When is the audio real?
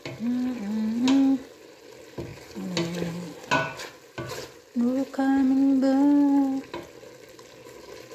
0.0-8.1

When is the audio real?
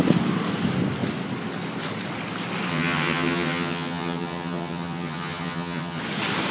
0.0-2.7; 6.0-6.5